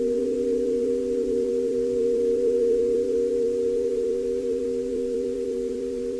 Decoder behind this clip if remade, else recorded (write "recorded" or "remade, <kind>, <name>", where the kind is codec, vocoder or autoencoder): remade, vocoder, BigVGAN v2